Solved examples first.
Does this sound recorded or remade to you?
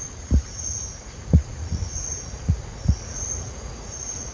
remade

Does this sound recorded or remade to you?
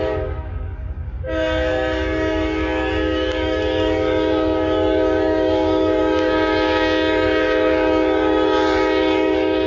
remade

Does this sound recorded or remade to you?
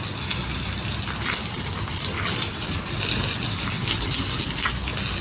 recorded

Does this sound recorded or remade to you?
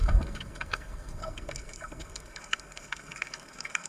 remade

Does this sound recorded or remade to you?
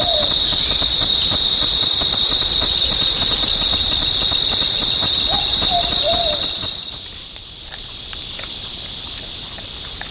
recorded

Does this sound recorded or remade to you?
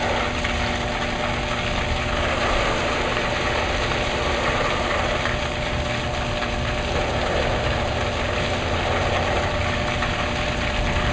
recorded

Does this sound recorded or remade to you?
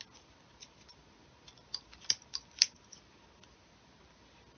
recorded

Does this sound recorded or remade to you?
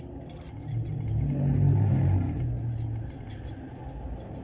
recorded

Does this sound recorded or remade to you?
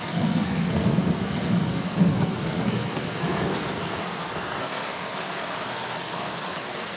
remade